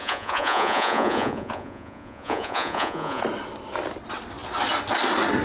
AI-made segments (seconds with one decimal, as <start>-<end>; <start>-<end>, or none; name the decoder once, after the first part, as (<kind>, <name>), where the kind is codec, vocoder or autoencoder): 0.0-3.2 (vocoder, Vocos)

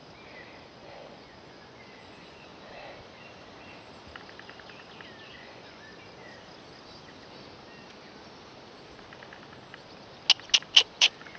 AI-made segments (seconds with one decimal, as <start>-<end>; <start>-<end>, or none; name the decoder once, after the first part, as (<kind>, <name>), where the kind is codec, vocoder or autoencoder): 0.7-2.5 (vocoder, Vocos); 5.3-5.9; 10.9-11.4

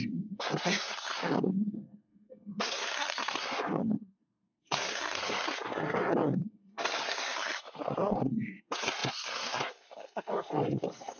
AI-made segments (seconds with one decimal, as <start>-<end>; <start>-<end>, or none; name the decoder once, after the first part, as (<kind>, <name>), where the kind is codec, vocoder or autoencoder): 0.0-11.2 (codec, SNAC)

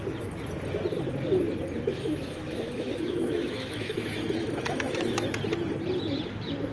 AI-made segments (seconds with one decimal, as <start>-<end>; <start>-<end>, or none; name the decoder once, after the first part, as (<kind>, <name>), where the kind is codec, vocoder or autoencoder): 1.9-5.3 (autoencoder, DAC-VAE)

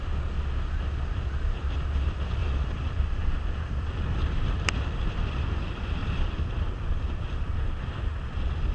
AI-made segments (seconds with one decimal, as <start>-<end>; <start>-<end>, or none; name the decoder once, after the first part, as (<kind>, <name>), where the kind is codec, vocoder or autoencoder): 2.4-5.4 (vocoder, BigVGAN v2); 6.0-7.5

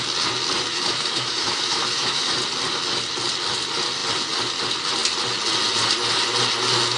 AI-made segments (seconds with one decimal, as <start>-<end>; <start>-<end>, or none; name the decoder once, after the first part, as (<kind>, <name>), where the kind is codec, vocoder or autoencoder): 0.7-2.3 (autoencoder, DAC-VAE)